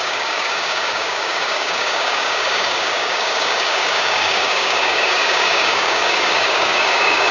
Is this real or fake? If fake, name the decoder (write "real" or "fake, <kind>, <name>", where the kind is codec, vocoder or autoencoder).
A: fake, codec, DAC